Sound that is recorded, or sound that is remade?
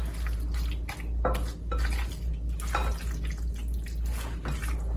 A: recorded